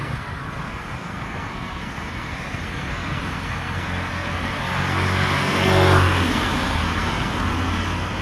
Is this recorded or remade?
remade